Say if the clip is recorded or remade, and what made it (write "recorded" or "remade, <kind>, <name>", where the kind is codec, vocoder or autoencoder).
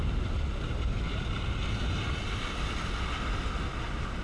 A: recorded